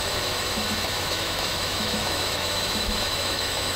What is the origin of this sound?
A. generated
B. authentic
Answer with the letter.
A